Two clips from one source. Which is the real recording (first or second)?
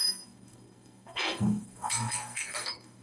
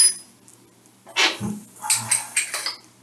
second